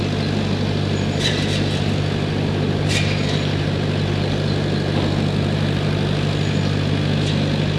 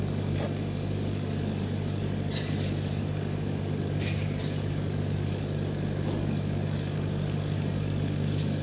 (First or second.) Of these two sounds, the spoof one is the second